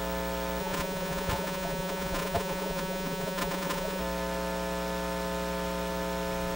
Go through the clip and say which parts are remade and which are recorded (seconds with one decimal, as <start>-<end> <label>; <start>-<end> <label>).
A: 0.0-0.6 recorded; 0.6-4.0 remade; 4.0-6.6 recorded